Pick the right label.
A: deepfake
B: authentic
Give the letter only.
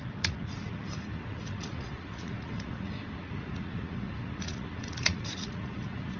A